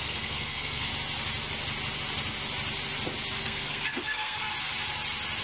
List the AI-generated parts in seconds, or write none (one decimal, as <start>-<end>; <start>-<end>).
0.0-0.9; 3.4-4.5